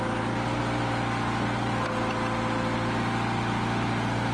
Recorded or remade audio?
recorded